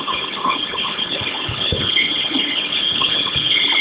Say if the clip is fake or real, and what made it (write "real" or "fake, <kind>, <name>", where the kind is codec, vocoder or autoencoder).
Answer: fake, codec, HILCodec